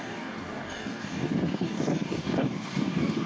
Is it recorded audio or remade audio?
remade